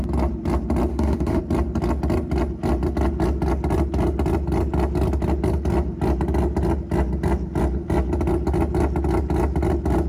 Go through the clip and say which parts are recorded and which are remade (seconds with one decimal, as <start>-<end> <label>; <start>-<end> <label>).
0.0-0.9 recorded; 0.9-1.4 remade; 1.4-10.1 recorded